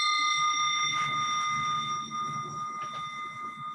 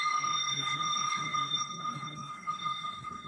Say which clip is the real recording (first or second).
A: first